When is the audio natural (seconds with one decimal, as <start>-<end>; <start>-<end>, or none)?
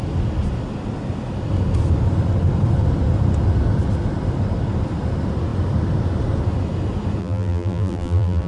0.0-7.2